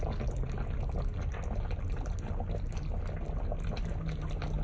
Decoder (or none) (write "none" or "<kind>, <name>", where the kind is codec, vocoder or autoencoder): none